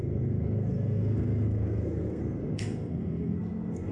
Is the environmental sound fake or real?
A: fake